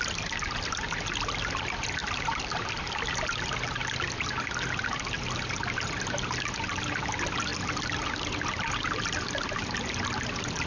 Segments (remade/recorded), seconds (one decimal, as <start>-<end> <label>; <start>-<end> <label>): 0.0-10.7 recorded